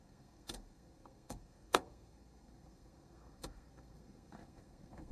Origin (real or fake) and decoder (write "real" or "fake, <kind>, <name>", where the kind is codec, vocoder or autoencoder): fake, codec, SNAC